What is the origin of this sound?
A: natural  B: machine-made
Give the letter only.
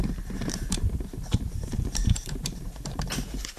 B